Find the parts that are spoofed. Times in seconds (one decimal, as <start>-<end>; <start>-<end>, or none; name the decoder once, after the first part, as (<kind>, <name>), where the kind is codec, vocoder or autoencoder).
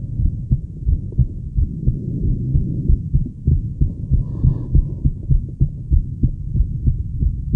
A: none